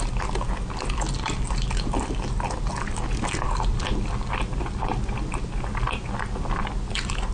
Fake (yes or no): no